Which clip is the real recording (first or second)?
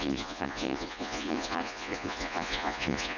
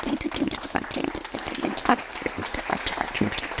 second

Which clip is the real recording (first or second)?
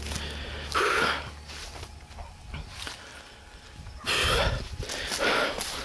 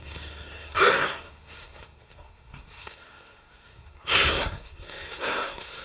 first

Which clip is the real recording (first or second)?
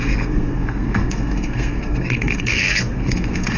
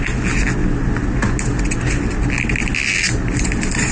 second